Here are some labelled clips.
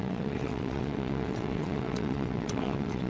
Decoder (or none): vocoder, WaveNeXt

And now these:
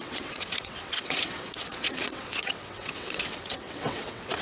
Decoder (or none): vocoder, WaveNeXt